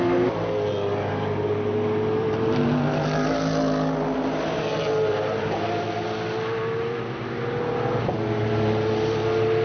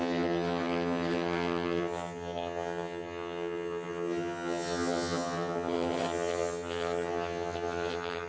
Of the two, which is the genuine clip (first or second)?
first